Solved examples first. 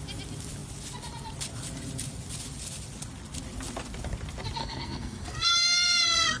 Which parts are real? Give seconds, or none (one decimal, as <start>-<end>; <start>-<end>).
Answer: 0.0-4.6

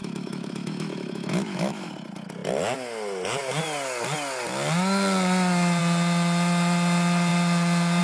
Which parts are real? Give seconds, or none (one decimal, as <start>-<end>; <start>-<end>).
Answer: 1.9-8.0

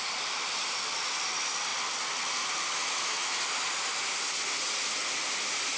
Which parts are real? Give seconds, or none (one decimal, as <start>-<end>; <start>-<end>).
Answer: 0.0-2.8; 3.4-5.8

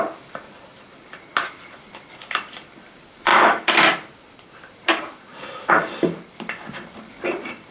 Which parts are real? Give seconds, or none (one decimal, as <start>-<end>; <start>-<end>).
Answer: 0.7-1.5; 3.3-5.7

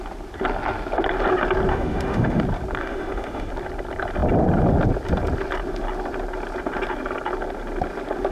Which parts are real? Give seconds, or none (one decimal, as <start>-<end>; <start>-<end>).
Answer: 0.0-1.7; 2.4-2.8; 3.5-8.3

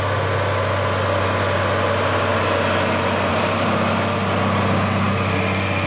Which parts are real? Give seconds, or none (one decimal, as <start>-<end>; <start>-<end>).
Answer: 0.0-3.3; 3.9-5.9

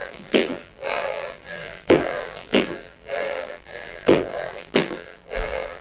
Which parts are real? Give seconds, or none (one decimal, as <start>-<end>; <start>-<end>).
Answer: none